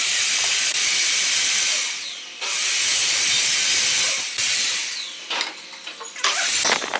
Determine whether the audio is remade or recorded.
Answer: recorded